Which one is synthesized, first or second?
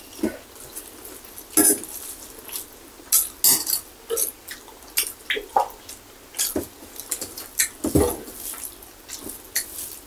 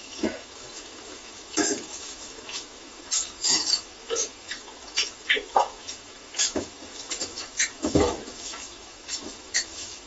second